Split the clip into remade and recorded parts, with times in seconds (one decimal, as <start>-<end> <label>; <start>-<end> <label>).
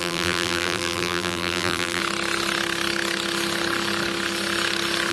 0.0-2.0 remade; 2.0-5.1 recorded